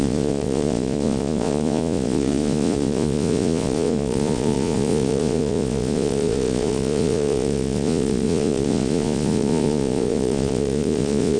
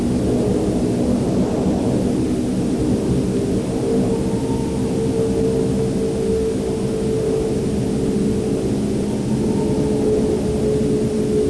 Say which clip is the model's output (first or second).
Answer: first